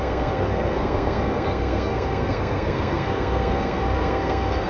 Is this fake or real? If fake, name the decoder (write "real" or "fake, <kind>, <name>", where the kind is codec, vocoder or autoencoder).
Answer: fake, codec, SNAC